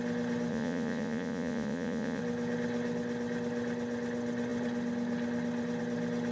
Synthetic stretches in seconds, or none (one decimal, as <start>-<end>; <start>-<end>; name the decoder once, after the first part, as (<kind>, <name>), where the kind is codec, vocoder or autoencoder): 0.5-2.2 (vocoder, Vocos)